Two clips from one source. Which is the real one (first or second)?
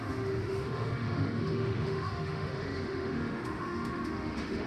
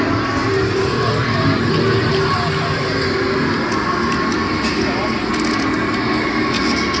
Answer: second